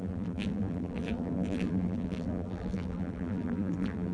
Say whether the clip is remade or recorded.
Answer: remade